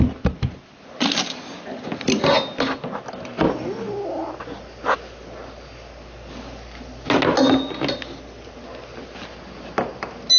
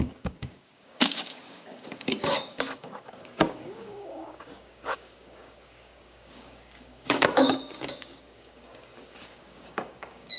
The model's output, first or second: second